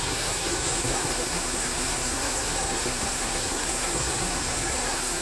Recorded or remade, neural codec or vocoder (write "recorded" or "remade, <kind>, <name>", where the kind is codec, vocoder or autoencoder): remade, codec, SNAC